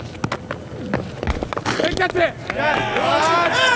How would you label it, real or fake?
real